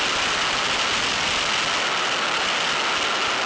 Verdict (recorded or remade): recorded